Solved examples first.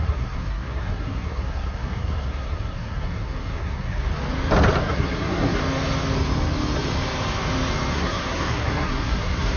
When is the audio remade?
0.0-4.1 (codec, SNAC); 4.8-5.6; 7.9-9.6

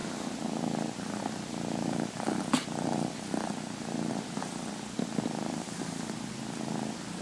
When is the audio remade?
none

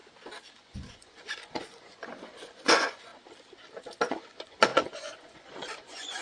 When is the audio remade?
0.6-3.1 (vocoder, Vocos); 4.1-6.2

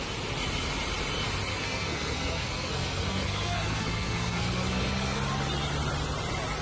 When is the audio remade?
1.5-5.2 (codec, SNAC)